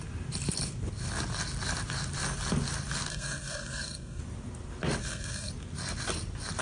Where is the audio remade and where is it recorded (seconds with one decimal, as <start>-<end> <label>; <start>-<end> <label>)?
0.0-3.1 recorded; 3.1-4.2 remade; 4.2-5.0 recorded; 5.0-5.5 remade; 5.5-6.6 recorded